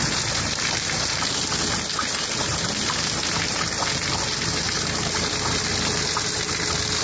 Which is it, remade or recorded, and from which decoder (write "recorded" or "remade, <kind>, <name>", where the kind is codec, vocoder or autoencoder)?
recorded